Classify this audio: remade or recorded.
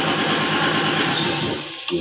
recorded